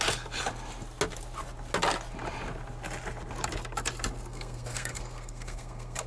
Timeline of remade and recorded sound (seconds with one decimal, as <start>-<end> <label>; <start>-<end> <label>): 0.0-4.3 recorded; 4.3-6.1 remade